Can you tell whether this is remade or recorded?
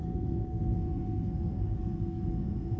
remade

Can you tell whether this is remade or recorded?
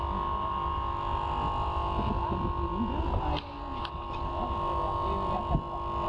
recorded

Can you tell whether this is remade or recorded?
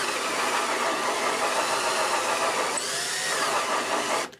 recorded